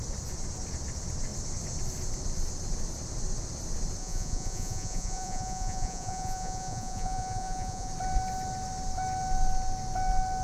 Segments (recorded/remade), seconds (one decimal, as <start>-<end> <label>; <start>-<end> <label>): 0.0-4.0 recorded; 4.0-7.9 remade; 7.9-10.4 recorded